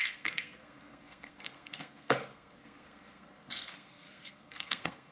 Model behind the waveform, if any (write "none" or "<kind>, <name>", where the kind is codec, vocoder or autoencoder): codec, SNAC